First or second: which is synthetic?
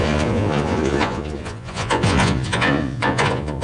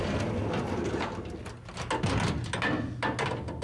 first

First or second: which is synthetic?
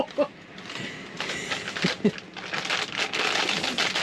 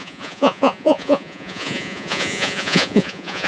second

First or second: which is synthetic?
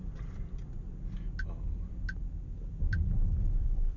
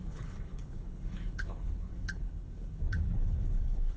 second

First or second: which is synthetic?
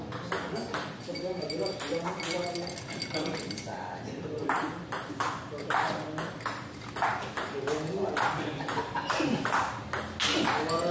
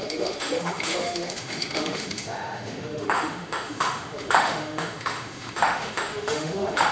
second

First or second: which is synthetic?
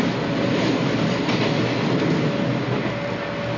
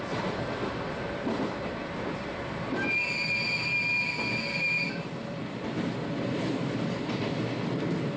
second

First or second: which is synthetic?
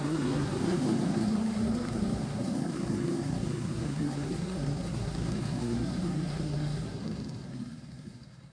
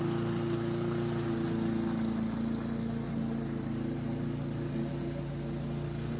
first